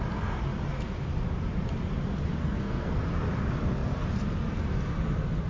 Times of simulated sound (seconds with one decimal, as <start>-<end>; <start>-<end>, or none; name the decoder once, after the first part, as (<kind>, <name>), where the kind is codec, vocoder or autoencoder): 2.4-3.0 (codec, SNAC)